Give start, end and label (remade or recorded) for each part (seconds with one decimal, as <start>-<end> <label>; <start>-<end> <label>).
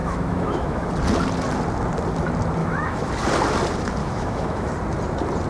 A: 0.0-0.9 remade; 0.9-2.6 recorded; 2.6-3.1 remade; 3.1-4.0 recorded; 4.0-4.7 remade; 4.7-5.5 recorded